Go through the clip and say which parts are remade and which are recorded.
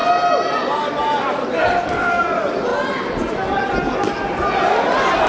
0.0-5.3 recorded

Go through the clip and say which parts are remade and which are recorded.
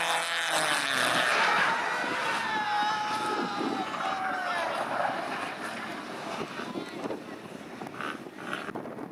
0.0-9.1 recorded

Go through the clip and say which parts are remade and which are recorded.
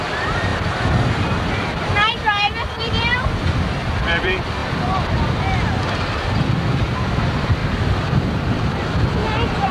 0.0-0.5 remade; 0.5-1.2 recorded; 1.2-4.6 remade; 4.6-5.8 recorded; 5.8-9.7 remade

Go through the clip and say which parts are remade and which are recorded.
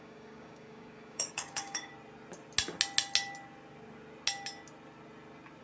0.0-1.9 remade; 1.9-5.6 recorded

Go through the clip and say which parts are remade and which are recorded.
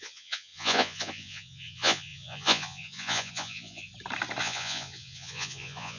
0.0-3.9 remade; 3.9-4.4 recorded; 4.4-6.0 remade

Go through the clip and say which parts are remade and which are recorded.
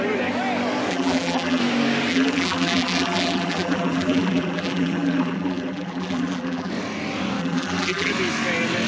0.0-0.9 recorded; 0.9-1.6 remade; 1.6-2.1 recorded; 2.1-6.7 remade; 6.7-7.4 recorded; 7.4-8.1 remade; 8.1-8.9 recorded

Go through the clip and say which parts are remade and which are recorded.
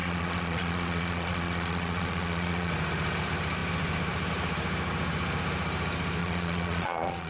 0.0-2.7 remade; 2.7-6.2 recorded; 6.2-7.3 remade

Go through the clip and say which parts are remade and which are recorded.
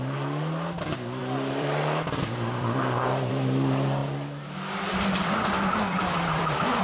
0.0-1.2 recorded; 1.2-3.3 remade; 3.3-4.0 recorded; 4.0-6.8 remade